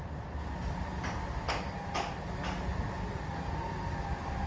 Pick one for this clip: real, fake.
real